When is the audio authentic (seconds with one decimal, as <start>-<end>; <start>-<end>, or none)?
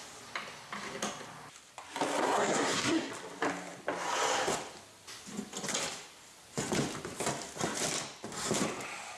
0.0-2.2; 3.1-9.2